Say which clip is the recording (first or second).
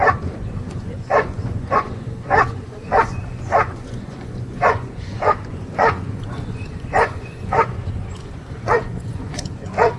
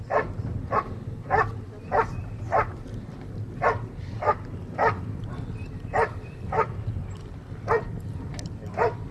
second